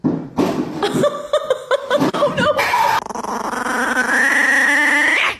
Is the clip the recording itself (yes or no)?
yes